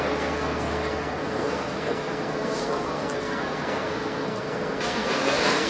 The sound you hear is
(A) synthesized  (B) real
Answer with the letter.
A